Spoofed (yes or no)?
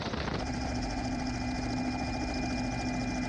no